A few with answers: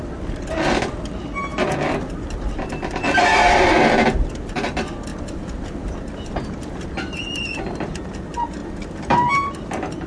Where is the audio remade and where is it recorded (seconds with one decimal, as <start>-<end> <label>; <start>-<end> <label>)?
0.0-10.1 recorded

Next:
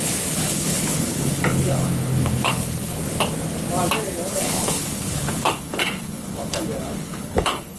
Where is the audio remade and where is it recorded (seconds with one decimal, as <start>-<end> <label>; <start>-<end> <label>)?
0.0-3.1 remade; 3.1-4.3 recorded; 4.3-7.8 remade

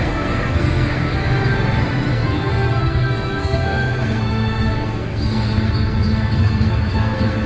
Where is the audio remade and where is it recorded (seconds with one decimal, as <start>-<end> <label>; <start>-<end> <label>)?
0.0-1.2 remade; 1.2-2.1 recorded; 2.1-7.5 remade